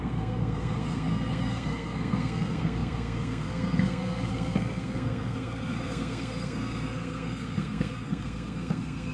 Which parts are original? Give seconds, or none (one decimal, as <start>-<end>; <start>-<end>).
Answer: none